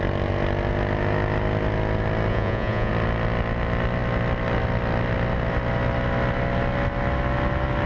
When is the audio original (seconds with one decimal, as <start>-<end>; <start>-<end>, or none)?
0.0-2.3; 2.9-7.9